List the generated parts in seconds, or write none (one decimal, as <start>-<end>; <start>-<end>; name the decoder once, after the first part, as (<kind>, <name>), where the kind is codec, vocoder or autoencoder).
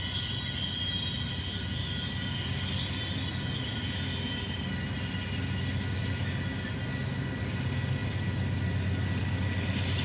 none